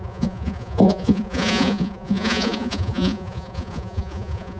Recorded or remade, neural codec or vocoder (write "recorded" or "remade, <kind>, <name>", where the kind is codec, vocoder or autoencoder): remade, vocoder, Vocos